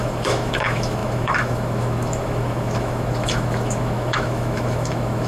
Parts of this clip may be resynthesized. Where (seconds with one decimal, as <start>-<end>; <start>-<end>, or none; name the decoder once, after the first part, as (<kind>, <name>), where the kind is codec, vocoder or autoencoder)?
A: 0.0-5.3 (autoencoder, DAC-VAE)